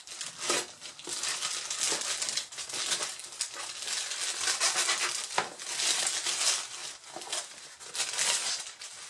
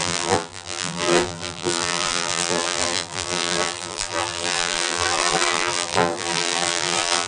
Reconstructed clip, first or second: second